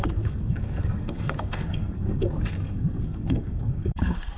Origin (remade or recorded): remade